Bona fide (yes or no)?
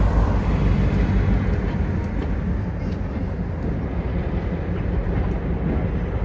yes